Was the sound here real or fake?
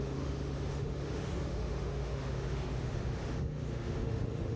fake